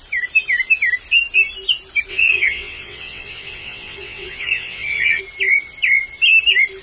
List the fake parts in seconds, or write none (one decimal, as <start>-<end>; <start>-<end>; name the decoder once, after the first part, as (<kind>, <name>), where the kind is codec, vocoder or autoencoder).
2.1-5.2 (vocoder, WaveNeXt)